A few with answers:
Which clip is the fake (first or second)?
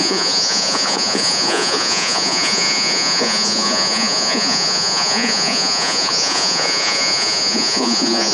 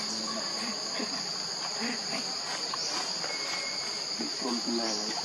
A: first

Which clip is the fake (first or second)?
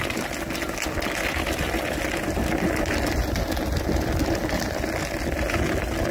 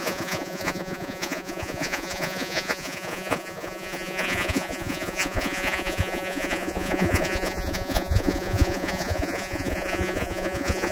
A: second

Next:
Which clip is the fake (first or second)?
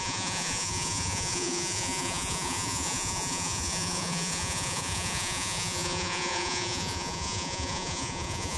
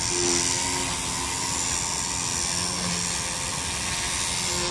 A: first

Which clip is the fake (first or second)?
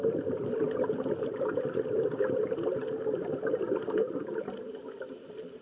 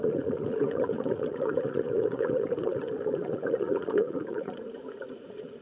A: second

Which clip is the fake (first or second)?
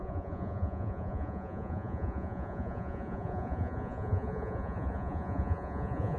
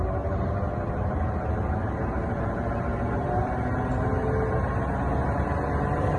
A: first